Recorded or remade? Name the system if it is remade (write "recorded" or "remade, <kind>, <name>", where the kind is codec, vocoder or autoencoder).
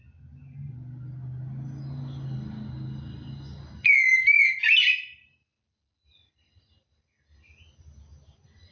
recorded